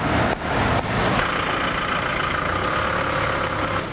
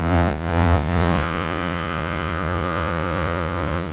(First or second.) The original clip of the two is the first